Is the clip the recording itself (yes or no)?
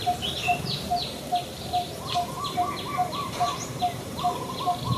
no